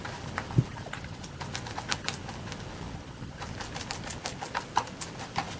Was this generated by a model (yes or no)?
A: no